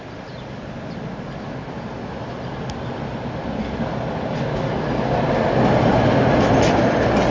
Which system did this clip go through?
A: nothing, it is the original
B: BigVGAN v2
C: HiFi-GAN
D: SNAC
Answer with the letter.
A